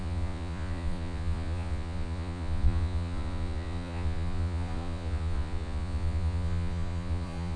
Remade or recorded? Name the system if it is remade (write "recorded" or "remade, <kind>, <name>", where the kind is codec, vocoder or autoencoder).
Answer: remade, vocoder, Vocos